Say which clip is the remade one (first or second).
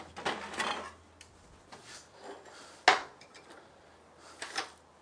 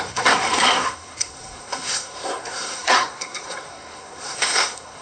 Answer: second